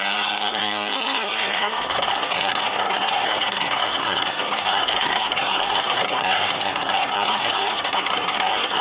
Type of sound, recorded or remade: remade